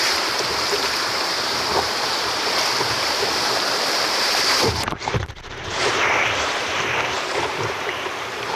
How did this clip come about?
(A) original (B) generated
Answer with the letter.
B